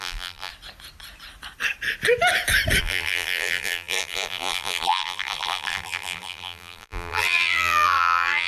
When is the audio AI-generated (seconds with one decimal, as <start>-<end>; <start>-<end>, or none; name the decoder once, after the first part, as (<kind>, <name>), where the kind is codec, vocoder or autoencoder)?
0.0-0.5 (vocoder, BigVGAN v2); 2.8-8.5